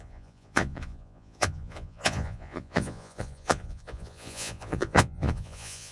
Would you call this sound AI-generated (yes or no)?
yes